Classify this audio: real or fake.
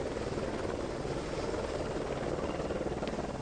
real